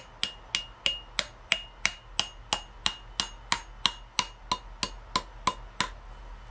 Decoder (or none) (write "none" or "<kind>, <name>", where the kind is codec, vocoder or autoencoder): none